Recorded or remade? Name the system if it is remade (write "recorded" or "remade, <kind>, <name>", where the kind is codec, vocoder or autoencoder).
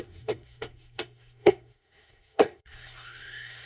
remade, codec, SNAC